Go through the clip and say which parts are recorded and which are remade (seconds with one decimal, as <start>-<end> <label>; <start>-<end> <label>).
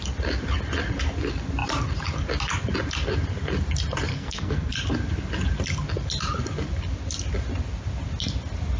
0.0-4.1 recorded; 4.1-4.7 remade; 4.7-8.8 recorded